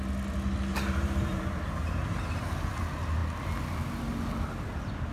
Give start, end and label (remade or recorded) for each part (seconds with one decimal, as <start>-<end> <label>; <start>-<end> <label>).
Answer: 0.0-0.7 recorded; 0.7-2.7 remade; 2.7-5.1 recorded